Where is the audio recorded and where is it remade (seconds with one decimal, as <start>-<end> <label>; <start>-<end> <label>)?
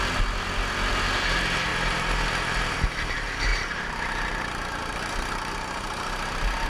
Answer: 0.0-3.5 recorded; 3.5-6.7 remade